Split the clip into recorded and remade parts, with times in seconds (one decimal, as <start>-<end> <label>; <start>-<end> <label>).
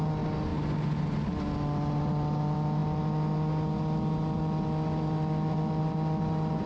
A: 0.0-6.7 recorded